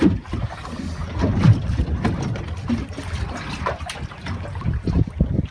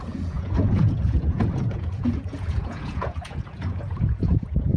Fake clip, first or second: second